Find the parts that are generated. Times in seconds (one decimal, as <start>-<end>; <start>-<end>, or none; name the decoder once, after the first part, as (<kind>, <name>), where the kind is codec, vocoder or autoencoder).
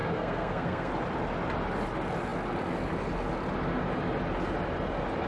0.0-0.9 (codec, SNAC)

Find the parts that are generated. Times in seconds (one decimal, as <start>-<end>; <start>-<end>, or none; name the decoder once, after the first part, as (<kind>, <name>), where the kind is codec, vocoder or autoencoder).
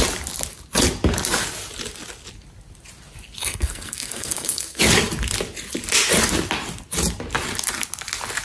3.4-4.8 (codec, SNAC)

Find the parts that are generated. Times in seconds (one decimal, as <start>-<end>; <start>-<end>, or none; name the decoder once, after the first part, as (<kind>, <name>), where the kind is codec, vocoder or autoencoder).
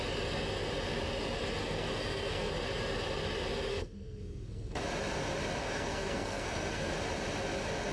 1.6-2.5 (codec, SNAC); 3.7-4.8; 5.6-6.9